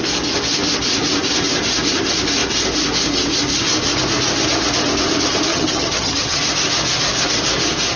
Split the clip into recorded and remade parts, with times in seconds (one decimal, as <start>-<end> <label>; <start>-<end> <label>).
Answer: 0.0-5.5 recorded; 5.5-6.4 remade; 6.4-8.0 recorded

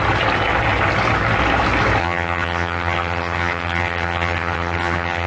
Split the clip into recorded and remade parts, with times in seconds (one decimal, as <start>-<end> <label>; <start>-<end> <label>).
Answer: 0.0-2.0 recorded; 2.0-5.3 remade